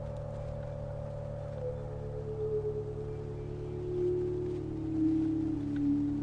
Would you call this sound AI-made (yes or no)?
no